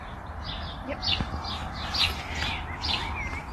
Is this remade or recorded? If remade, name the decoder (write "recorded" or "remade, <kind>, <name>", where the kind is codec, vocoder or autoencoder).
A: recorded